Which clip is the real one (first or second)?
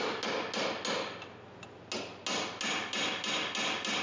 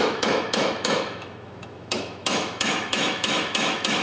first